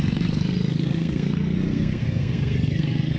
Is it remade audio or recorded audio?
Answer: remade